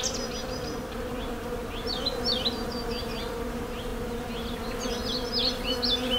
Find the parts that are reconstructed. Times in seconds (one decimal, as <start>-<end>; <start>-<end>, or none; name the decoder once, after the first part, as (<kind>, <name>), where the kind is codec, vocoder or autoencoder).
none